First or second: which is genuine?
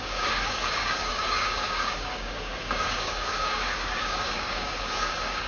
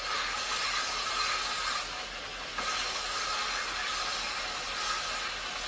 second